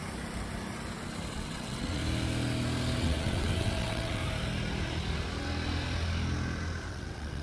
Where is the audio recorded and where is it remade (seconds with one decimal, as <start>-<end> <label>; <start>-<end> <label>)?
0.0-1.3 recorded; 1.3-2.0 remade; 2.0-3.0 recorded; 3.0-4.2 remade; 4.2-6.9 recorded; 6.9-7.4 remade